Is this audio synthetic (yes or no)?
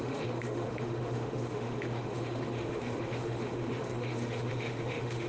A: yes